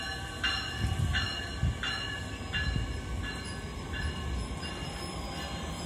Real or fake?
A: real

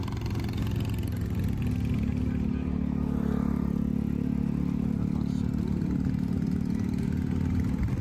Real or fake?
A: real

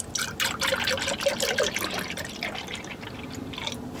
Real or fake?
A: real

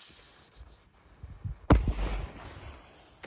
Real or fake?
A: real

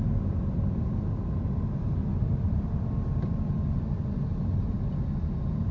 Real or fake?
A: real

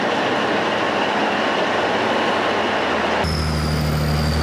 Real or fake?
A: real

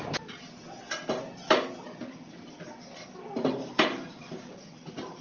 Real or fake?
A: real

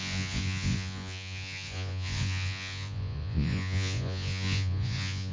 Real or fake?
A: fake